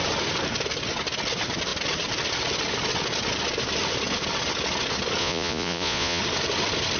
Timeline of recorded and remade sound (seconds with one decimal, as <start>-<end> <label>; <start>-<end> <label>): 0.0-5.2 recorded; 5.2-6.2 remade; 6.2-7.0 recorded